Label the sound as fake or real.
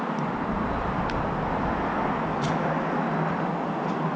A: real